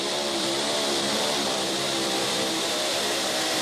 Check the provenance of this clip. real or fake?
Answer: fake